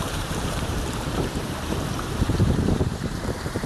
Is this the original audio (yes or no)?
no